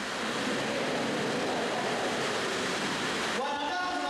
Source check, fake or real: real